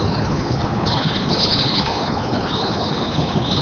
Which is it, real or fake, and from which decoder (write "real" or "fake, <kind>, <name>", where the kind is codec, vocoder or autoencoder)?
fake, codec, HILCodec